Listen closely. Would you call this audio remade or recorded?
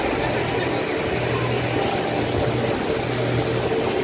recorded